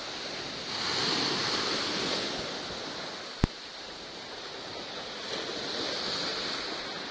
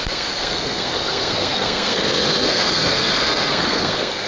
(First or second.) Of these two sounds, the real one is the first